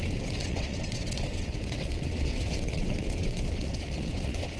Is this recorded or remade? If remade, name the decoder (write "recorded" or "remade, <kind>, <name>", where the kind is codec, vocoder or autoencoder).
remade, vocoder, WaveNeXt